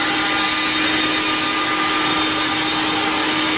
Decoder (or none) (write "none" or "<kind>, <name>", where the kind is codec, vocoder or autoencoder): none